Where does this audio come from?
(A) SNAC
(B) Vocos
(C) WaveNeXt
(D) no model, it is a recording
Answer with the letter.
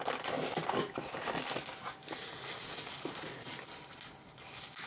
D